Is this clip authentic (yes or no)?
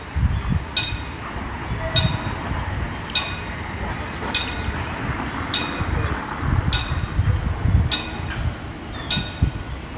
yes